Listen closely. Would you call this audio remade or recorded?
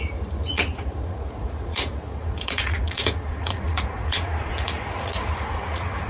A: remade